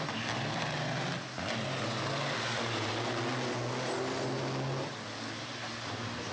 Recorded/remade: recorded